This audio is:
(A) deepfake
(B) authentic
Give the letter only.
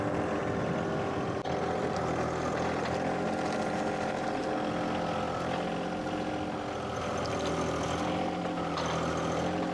B